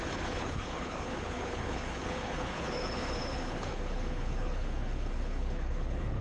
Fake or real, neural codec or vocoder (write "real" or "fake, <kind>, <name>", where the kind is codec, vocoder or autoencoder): fake, codec, HILCodec